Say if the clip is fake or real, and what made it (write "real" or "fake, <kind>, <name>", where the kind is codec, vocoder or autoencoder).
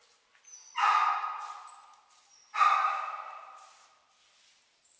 real